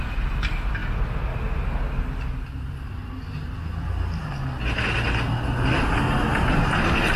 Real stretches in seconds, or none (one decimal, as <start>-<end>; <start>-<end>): 0.0-7.2